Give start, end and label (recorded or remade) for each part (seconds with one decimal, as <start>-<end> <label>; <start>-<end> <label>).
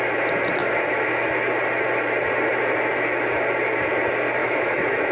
0.0-0.6 recorded; 0.6-1.3 remade; 1.3-4.4 recorded; 4.4-5.1 remade